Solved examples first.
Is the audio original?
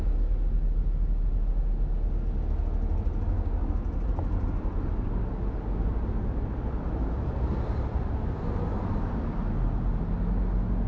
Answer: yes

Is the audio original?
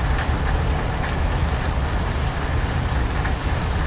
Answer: yes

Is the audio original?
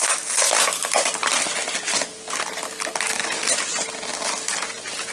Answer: yes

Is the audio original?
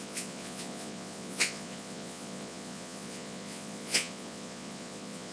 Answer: no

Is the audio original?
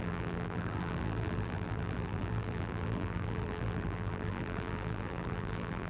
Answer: no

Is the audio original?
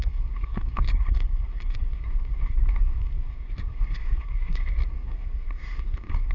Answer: no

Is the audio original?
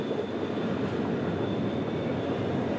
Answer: yes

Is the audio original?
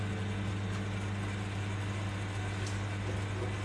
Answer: yes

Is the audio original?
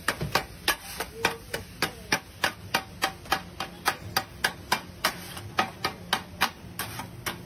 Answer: yes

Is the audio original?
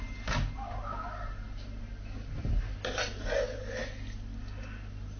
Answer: yes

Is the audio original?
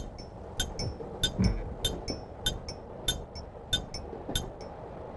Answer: yes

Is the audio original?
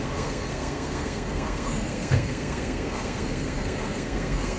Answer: no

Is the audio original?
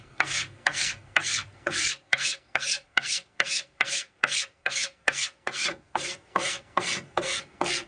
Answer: no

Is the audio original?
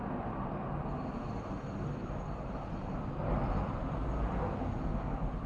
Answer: yes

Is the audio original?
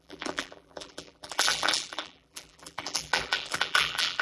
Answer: no